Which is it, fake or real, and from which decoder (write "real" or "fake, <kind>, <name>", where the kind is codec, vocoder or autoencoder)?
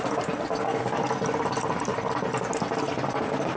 real